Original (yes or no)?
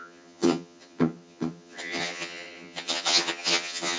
no